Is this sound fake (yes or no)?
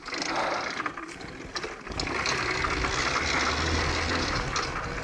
no